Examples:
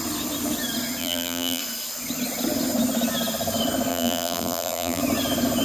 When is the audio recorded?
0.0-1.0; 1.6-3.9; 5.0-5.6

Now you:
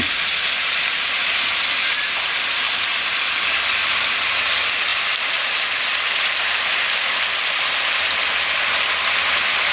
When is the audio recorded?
0.0-4.9; 5.8-9.7

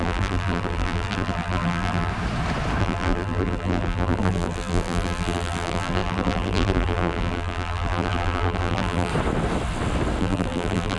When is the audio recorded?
2.1-2.8; 9.1-10.2

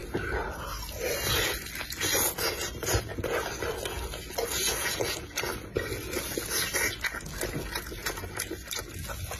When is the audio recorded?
0.0-9.4